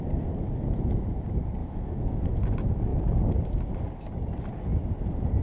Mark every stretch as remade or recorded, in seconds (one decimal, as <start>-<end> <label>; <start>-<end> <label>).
0.0-1.6 recorded; 1.6-2.4 remade; 2.4-5.4 recorded